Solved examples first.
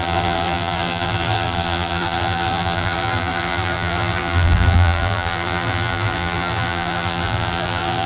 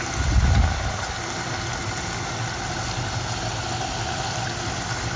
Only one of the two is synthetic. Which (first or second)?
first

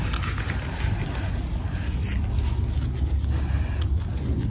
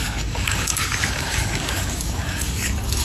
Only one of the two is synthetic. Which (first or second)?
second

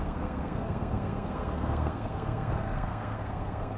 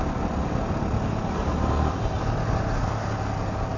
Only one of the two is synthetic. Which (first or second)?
first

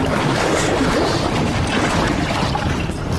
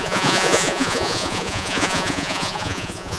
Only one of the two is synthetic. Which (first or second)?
second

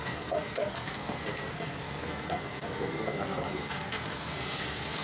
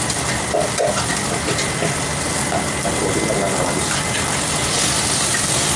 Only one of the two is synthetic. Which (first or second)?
first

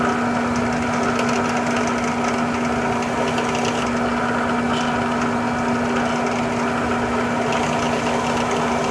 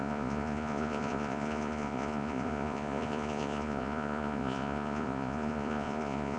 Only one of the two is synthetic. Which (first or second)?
second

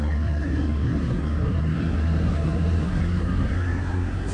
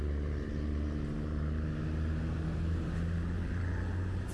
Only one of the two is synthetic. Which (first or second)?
first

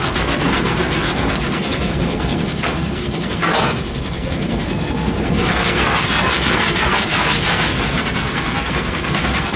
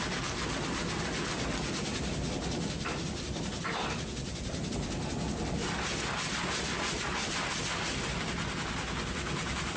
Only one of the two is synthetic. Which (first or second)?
first